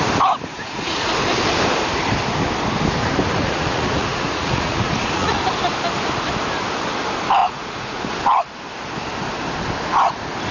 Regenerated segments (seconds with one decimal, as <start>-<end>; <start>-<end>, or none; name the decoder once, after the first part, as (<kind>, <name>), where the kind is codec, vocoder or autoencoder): 0.5-1.1 (vocoder, Vocos); 3.4-5.4; 7.4-8.1